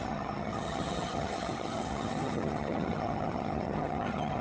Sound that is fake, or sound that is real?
fake